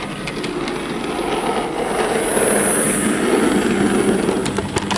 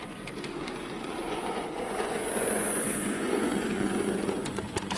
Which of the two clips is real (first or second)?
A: first